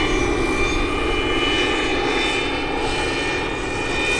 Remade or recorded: recorded